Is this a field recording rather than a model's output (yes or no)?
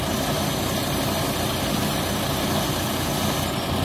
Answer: yes